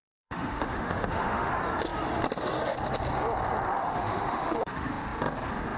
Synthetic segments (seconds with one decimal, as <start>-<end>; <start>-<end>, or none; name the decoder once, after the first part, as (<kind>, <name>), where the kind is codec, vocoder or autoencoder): 0.0-1.5 (autoencoder, DAC-VAE); 3.7-4.9